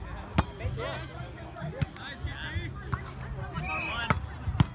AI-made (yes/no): no